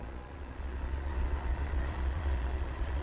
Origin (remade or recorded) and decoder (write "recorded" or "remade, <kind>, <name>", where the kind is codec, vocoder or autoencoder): remade, vocoder, Vocos